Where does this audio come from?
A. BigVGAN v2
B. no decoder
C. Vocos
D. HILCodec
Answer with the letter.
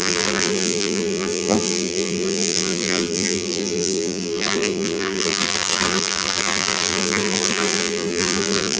A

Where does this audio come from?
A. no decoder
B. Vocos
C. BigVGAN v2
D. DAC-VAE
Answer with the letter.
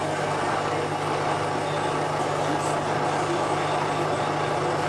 A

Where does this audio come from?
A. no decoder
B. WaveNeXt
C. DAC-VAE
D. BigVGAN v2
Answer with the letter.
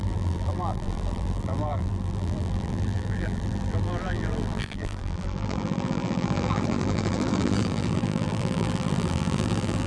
D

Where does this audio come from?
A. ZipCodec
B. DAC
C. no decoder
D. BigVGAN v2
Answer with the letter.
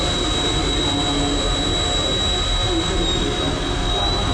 C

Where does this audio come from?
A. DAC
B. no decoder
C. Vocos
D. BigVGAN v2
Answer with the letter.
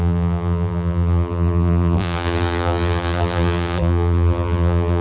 D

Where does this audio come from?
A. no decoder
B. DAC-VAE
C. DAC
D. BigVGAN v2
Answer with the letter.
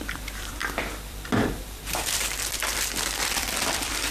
D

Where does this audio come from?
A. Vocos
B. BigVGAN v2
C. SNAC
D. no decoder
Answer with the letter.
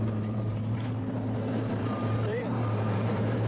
B